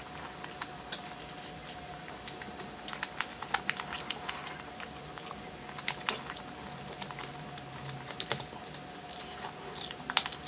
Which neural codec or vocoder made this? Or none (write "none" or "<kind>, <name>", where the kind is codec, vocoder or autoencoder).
none